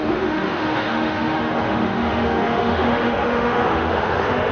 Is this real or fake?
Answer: fake